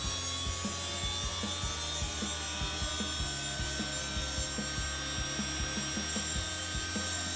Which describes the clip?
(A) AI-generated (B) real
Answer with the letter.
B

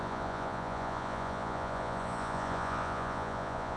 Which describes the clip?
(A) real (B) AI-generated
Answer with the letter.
B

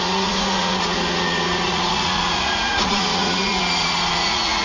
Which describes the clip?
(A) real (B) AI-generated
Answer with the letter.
B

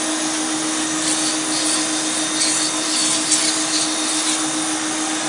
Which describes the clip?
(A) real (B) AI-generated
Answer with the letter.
A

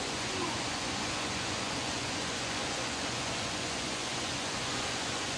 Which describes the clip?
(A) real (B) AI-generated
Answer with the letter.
B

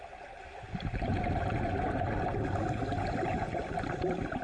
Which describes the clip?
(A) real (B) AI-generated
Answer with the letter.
A